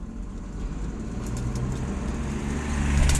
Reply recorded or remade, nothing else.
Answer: recorded